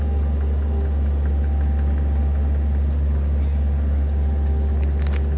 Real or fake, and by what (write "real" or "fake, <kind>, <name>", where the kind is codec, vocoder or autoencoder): real